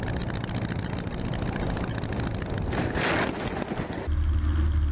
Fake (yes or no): no